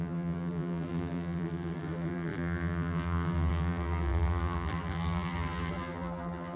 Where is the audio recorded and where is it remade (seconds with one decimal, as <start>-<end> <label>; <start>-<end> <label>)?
0.0-6.6 remade